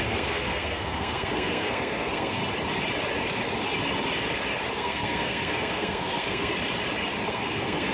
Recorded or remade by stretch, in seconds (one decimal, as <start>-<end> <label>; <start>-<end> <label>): 0.0-2.4 remade; 2.4-4.7 recorded; 4.7-6.5 remade; 6.5-7.3 recorded; 7.3-7.9 remade